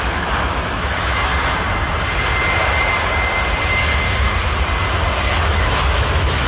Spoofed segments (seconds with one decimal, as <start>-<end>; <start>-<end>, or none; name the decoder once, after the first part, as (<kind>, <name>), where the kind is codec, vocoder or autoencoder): 0.0-1.3 (autoencoder, DAC-VAE); 5.2-6.5